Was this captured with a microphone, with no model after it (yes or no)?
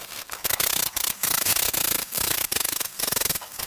no